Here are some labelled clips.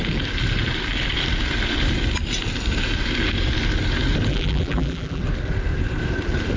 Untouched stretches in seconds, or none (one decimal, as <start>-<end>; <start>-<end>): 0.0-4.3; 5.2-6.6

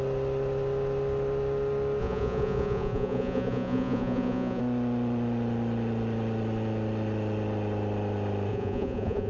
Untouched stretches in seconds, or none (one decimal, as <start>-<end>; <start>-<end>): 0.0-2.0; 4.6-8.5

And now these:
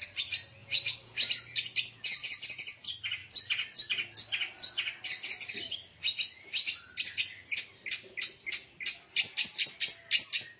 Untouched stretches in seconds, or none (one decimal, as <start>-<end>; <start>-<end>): 0.0-0.6; 1.3-10.6

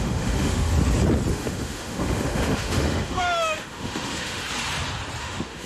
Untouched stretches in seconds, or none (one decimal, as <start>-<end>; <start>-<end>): 0.7-1.3; 4.4-5.2

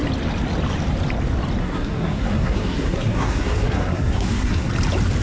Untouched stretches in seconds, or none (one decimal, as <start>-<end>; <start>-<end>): 0.0-1.6; 4.7-5.2

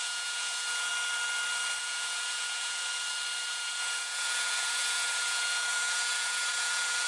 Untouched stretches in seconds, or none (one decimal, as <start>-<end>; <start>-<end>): 0.9-1.8; 2.9-3.5

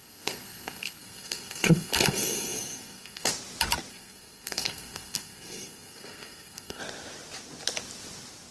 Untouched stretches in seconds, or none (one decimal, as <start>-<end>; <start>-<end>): 3.3-3.9; 6.8-8.5